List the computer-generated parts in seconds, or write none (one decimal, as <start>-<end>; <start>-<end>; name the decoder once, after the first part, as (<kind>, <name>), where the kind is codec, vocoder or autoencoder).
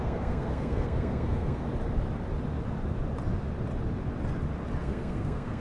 0.0-1.6 (codec, SNAC); 4.8-5.6